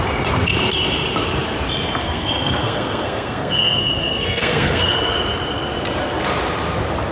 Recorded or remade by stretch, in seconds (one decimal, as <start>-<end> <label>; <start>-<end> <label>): 0.0-2.0 recorded; 2.0-5.1 remade; 5.1-7.1 recorded